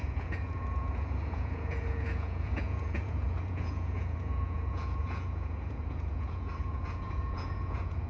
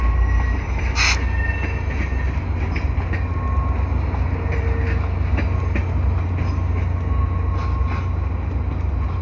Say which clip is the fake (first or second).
first